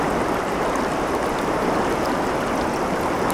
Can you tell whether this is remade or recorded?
recorded